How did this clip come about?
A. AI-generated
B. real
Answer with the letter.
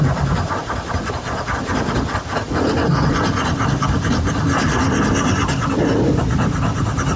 B